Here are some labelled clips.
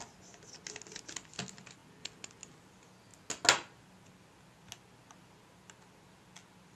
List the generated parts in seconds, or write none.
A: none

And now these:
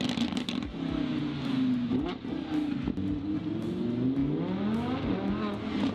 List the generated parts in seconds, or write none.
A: none

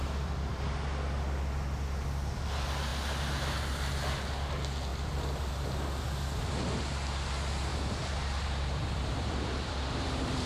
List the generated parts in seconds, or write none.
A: 0.0-0.6 (vocoder, BigVGAN v2); 4.9-5.5; 7.7-10.5